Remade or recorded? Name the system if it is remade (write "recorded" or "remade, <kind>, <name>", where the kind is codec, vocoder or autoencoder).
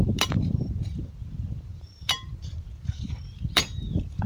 remade, vocoder, BigVGAN v2